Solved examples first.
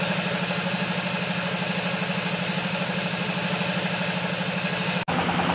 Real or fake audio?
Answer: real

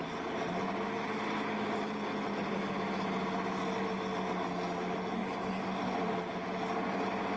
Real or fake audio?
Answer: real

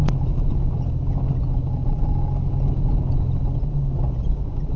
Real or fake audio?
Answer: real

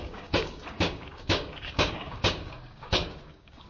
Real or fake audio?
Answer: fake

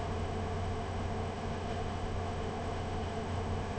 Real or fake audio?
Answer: fake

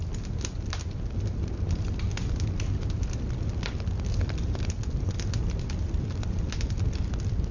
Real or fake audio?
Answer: real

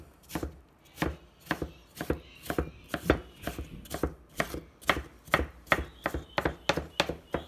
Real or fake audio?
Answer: real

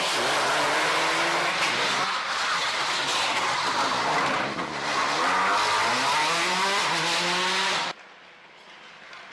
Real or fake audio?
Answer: real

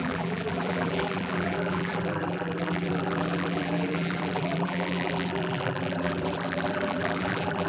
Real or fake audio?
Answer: fake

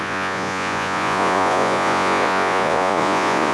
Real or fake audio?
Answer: fake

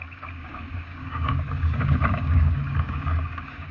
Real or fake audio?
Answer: fake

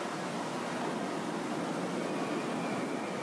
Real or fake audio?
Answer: real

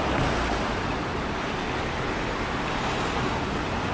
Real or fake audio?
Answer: real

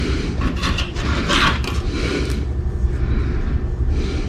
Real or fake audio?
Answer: real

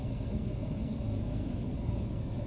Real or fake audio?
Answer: fake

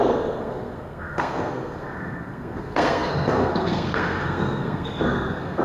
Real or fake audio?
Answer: fake